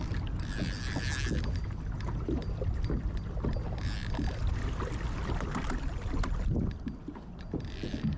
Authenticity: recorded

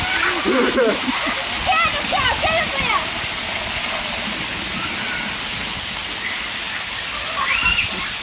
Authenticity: recorded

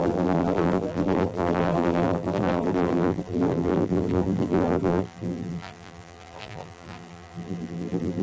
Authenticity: remade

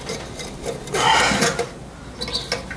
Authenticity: recorded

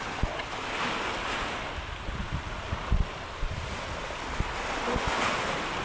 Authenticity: recorded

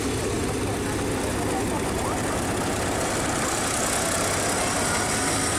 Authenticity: recorded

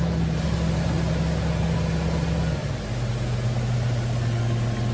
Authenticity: recorded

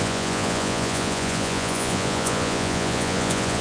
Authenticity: remade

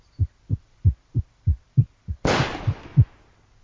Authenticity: recorded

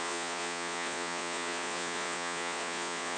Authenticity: remade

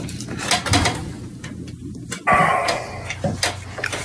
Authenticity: recorded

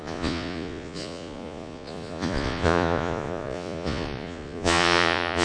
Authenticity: remade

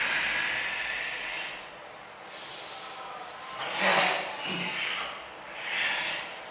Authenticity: recorded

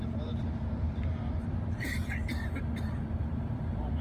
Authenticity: remade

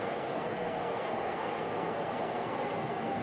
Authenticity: remade